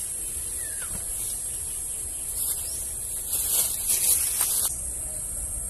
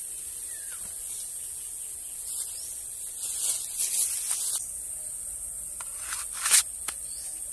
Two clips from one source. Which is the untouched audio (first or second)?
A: second